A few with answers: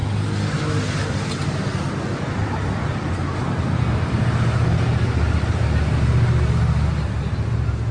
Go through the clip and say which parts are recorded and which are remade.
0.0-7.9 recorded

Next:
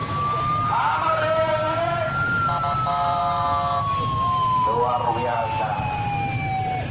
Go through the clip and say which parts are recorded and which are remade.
0.0-1.8 recorded; 1.8-3.2 remade; 3.2-6.9 recorded

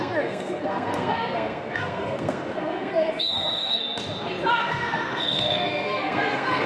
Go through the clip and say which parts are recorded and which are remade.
0.0-3.8 remade; 3.8-4.5 recorded; 4.5-6.7 remade

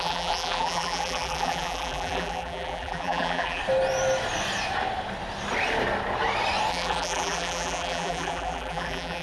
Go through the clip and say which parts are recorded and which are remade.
0.0-3.6 remade; 3.6-6.7 recorded; 6.7-9.2 remade

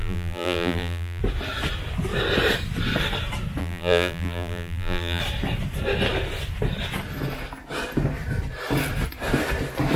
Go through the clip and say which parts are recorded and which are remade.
0.0-1.2 remade; 1.2-3.6 recorded; 3.6-5.2 remade; 5.2-10.0 recorded

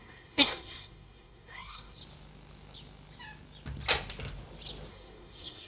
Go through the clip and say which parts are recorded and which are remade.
0.0-2.0 remade; 2.0-4.9 recorded; 4.9-5.7 remade

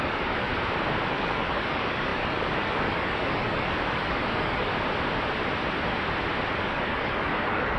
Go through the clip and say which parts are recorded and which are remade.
0.0-0.5 remade; 0.5-1.1 recorded; 1.1-4.7 remade; 4.7-6.6 recorded; 6.6-7.8 remade